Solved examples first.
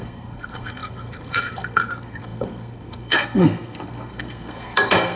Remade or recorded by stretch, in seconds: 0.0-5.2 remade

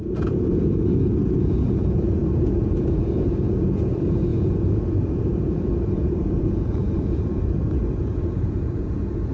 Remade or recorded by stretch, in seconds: 0.0-9.3 remade

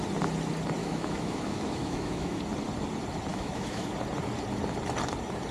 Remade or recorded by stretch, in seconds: 0.0-0.8 recorded; 0.8-2.4 remade; 2.4-3.3 recorded; 3.3-3.9 remade; 3.9-5.5 recorded

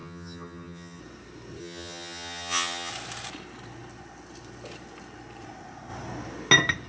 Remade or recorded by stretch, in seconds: 0.0-1.0 remade; 1.0-1.6 recorded; 1.6-2.9 remade; 2.9-6.9 recorded

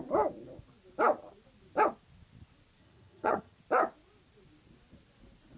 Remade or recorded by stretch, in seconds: 0.0-2.8 recorded; 2.8-3.6 remade; 3.6-5.6 recorded

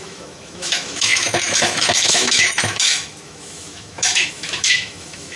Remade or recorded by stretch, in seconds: 0.0-5.4 remade

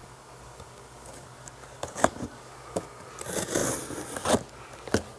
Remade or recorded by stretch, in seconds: 0.0-3.1 remade; 3.1-5.2 recorded

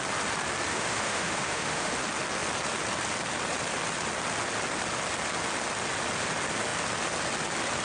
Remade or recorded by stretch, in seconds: 0.0-0.7 recorded; 0.7-1.9 remade; 1.9-7.8 recorded